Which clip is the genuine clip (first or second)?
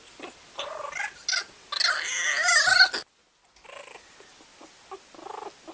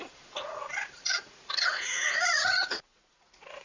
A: first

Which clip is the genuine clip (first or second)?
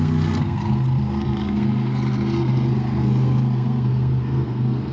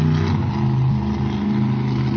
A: second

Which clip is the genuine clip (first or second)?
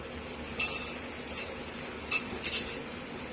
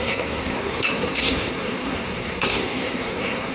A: first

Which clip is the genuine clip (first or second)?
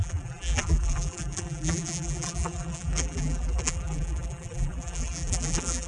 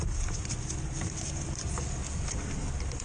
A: second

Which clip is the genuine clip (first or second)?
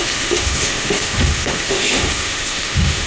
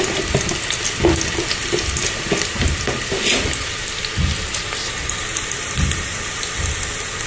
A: second